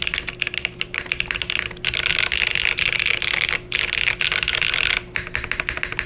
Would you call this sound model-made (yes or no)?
no